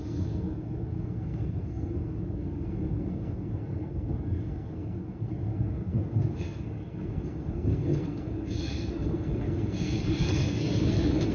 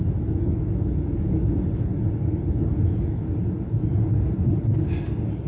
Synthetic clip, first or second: first